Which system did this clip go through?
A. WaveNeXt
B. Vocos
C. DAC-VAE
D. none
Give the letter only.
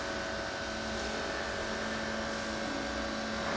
D